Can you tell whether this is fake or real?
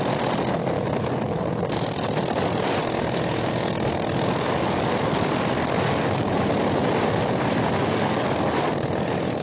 real